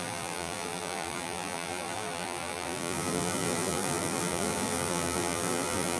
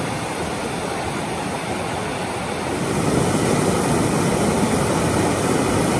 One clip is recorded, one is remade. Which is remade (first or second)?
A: first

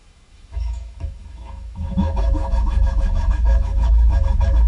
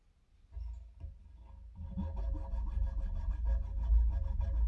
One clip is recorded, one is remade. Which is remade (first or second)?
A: first